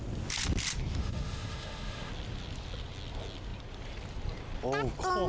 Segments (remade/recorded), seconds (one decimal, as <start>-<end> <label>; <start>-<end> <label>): 0.0-1.0 recorded; 1.0-2.1 remade; 2.1-5.3 recorded